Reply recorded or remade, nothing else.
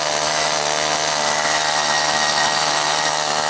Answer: recorded